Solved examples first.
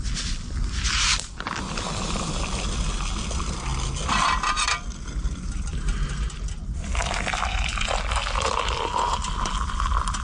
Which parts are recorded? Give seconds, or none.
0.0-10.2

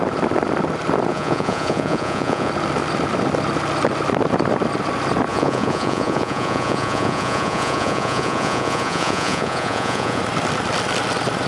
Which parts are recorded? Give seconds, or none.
0.0-1.1; 2.5-5.3; 10.2-11.5

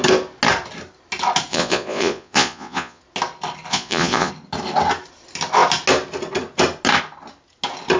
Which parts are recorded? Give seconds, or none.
0.0-1.5; 3.0-3.7; 4.3-8.0